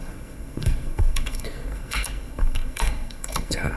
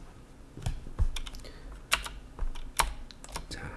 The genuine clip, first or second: second